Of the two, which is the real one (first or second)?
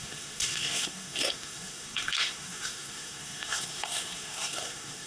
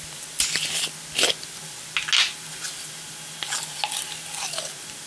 second